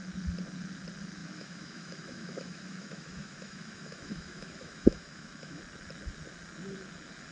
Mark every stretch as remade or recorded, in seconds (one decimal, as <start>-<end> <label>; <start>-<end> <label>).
0.0-1.2 recorded; 1.2-5.6 remade; 5.6-7.3 recorded